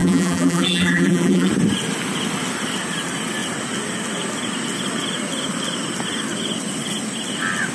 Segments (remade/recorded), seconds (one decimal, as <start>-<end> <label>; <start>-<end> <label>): 0.0-1.5 remade; 1.5-7.7 recorded